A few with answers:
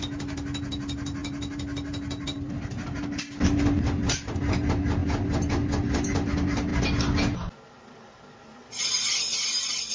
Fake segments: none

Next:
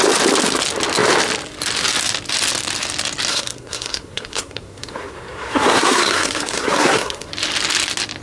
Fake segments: 3.3-7.3 (codec, SNAC)

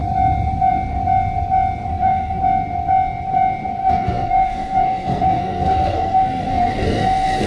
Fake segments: 1.9-2.4 (codec, SNAC); 3.8-7.5

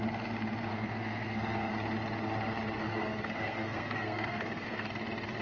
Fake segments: 0.7-1.7 (codec, SNAC); 2.8-4.9

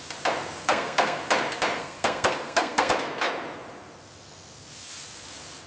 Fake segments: 0.6-1.2 (codec, SNAC); 1.8-2.9

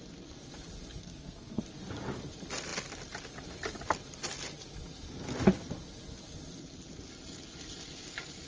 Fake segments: 1.0-1.6 (codec, SNAC)